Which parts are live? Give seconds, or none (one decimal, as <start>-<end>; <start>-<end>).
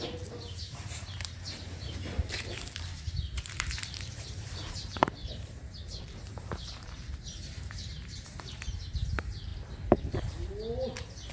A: 9.5-11.3